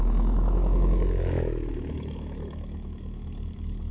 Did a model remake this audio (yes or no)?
yes